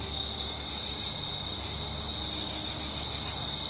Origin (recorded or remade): recorded